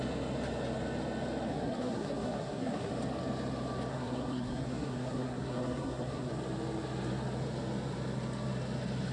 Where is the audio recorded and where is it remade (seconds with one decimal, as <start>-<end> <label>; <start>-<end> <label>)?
0.0-1.5 recorded; 1.5-2.9 remade; 2.9-3.9 recorded; 3.9-6.3 remade; 6.3-9.1 recorded